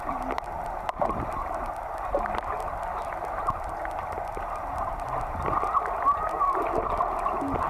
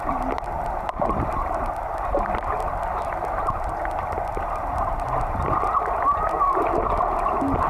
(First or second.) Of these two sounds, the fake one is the second